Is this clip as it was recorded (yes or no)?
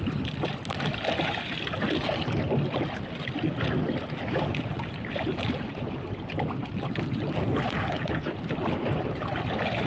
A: yes